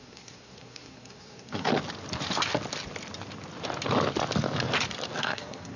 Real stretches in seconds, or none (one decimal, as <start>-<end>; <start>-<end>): 1.7-5.2